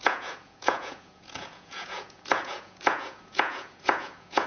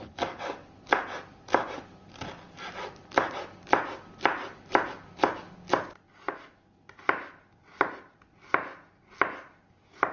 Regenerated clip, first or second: first